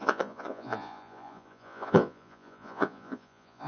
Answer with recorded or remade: remade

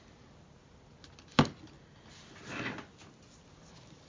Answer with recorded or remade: recorded